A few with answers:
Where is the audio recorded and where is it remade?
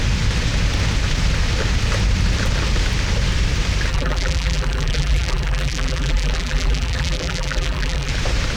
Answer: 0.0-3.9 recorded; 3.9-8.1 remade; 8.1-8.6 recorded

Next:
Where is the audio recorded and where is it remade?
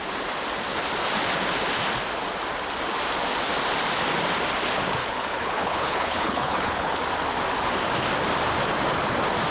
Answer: 0.0-5.0 recorded; 5.0-7.0 remade; 7.0-9.5 recorded